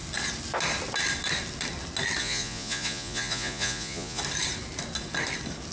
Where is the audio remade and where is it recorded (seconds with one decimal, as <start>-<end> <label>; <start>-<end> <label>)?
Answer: 0.0-2.2 recorded; 2.2-4.2 remade; 4.2-5.7 recorded